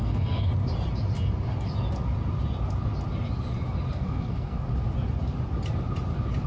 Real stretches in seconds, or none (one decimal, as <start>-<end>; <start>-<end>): 0.5-3.9; 4.7-6.5